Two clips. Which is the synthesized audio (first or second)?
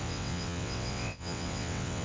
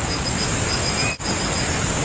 first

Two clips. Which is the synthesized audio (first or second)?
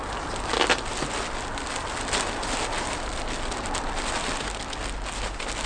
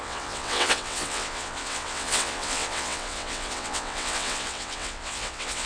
second